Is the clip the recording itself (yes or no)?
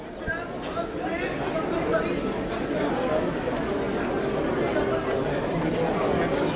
yes